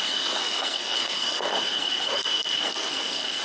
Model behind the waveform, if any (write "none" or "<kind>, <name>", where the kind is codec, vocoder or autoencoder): codec, SNAC